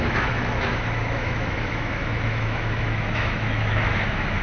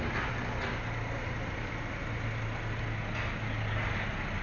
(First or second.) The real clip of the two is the second